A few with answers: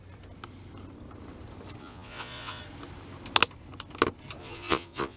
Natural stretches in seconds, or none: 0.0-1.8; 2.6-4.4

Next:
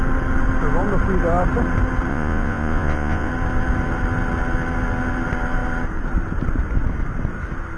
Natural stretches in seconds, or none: 0.0-2.1; 3.3-7.8

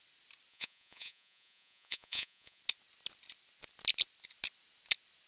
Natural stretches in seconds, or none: 0.0-0.5; 2.6-5.3

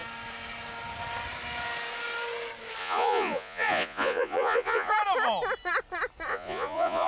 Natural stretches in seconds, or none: 0.0-2.8; 4.9-6.3